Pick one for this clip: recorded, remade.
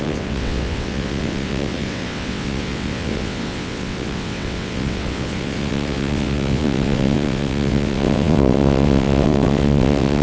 remade